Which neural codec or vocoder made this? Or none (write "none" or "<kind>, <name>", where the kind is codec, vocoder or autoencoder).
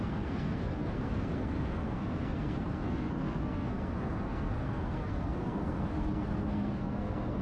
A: codec, SNAC